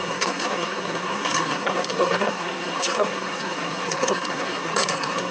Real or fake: fake